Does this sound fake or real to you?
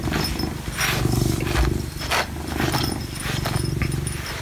real